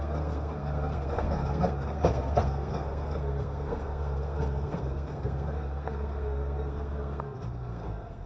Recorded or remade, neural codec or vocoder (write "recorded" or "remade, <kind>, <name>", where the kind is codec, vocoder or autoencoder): remade, codec, SNAC